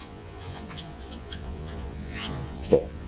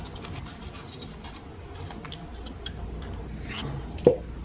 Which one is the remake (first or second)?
first